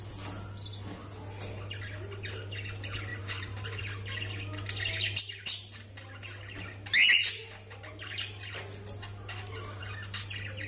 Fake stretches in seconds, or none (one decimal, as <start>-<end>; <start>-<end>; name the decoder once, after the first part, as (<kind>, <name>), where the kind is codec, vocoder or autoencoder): 3.1-3.8 (vocoder, BigVGAN v2)